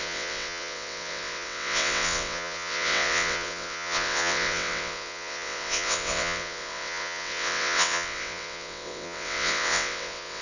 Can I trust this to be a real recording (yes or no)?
no